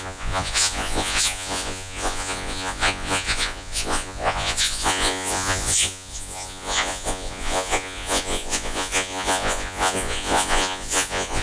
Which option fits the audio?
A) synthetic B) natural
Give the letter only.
A